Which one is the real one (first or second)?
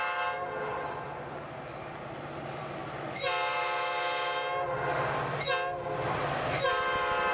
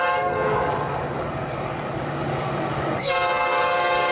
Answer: first